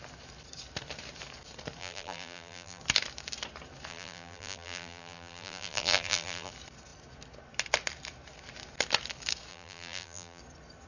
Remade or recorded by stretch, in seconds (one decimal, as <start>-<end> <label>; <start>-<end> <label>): 0.0-1.8 recorded; 1.8-2.8 remade; 2.8-3.9 recorded; 3.9-6.5 remade; 6.5-9.5 recorded; 9.5-10.4 remade; 10.4-10.9 recorded